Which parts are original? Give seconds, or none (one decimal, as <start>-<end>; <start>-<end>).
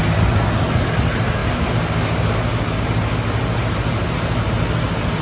0.0-5.2